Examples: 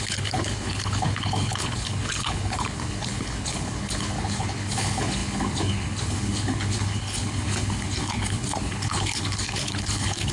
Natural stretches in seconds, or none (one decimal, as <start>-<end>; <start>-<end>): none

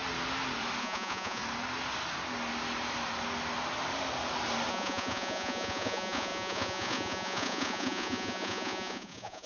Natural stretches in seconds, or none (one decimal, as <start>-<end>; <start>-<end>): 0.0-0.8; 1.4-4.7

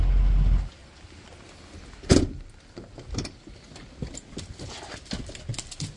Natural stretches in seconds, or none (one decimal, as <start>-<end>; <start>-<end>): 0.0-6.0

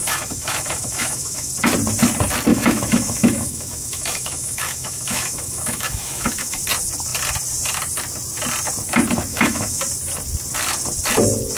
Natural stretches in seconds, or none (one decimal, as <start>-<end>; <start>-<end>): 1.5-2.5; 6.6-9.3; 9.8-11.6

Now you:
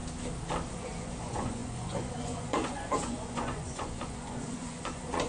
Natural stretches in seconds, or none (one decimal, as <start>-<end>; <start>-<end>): 0.0-0.7

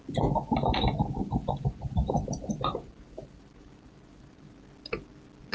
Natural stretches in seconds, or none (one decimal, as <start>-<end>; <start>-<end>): 0.0-1.2; 4.5-5.5

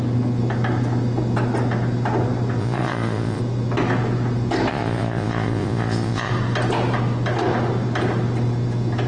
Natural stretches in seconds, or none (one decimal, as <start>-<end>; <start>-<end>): 0.0-2.6; 3.4-4.7; 6.3-9.1